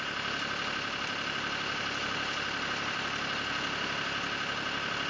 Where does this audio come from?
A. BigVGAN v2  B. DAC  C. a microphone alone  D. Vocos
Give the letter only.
C